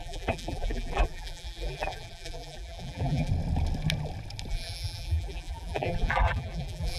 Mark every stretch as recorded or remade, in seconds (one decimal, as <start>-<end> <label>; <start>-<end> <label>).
0.0-3.3 remade; 3.3-4.5 recorded; 4.5-7.0 remade